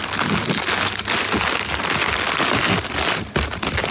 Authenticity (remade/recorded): recorded